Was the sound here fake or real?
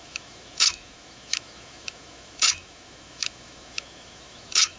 fake